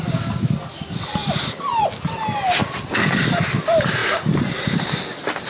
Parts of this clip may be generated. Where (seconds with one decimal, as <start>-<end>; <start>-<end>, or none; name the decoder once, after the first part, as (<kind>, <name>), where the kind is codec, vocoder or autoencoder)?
none